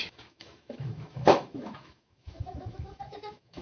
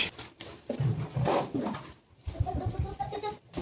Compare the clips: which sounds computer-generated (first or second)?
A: first